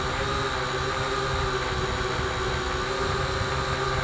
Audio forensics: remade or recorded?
recorded